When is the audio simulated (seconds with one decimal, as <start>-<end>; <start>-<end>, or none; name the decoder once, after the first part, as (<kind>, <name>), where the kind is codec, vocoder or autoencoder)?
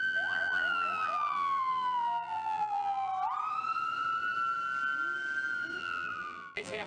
0.0-3.1 (vocoder, BigVGAN v2); 5.8-6.9